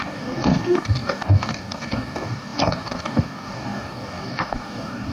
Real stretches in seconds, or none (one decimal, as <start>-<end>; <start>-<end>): none